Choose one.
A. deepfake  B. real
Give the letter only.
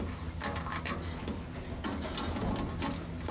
B